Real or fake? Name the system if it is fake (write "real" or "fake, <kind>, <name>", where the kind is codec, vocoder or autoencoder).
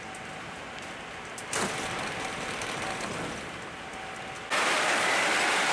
real